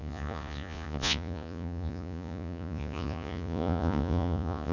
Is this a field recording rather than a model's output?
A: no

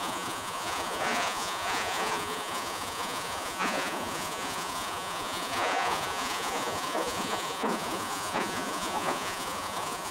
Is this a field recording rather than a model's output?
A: no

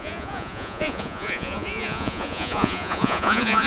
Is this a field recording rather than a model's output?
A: no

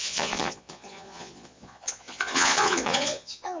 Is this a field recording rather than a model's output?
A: no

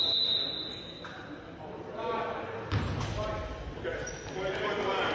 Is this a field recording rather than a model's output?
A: yes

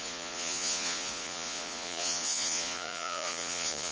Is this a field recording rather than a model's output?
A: no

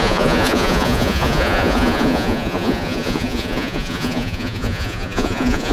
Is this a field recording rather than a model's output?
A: no